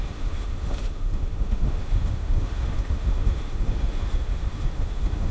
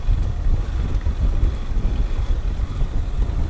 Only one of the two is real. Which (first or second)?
second